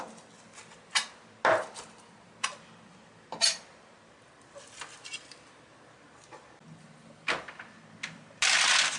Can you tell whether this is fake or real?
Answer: real